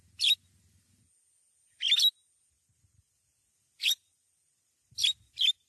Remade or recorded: recorded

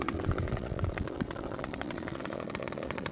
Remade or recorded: remade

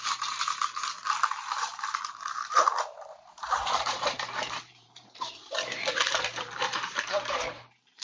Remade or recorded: remade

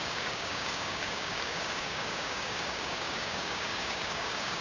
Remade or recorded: remade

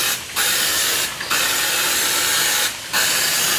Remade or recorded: recorded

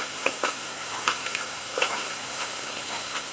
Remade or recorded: remade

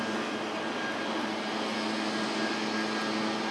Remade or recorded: recorded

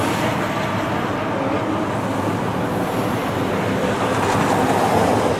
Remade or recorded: recorded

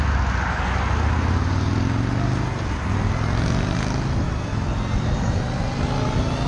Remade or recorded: recorded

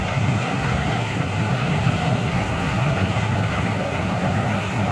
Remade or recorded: remade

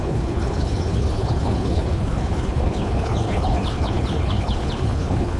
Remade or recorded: remade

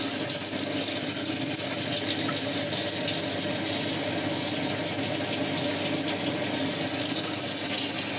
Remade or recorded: recorded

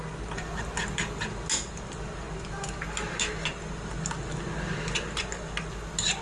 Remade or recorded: recorded